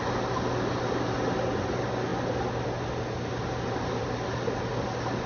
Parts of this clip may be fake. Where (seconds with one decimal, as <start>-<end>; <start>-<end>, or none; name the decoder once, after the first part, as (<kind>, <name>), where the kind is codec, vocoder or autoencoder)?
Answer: none